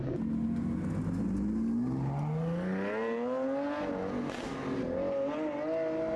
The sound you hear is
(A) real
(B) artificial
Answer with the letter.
A